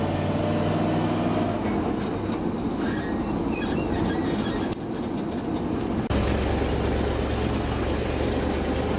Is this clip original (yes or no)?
yes